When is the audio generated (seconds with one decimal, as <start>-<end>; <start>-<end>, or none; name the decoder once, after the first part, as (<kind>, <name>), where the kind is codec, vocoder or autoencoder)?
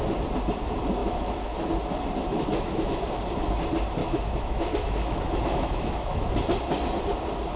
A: 1.0-1.7 (autoencoder, DAC-VAE); 2.2-3.0; 4.0-6.3